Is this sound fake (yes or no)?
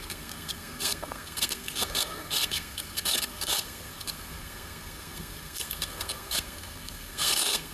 yes